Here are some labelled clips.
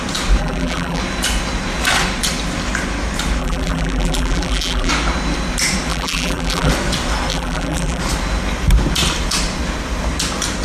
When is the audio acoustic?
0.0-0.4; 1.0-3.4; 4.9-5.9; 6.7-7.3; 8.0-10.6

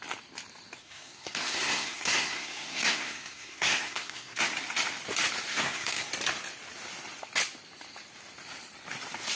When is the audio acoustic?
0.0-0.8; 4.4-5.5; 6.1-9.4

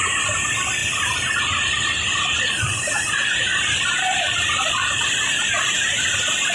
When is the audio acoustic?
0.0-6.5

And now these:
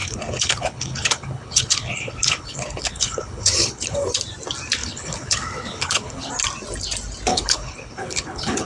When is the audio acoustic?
4.1-4.8; 6.3-7.3

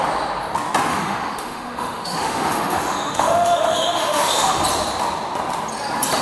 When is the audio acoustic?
0.0-0.9; 4.6-6.2